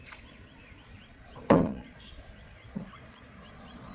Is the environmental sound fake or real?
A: fake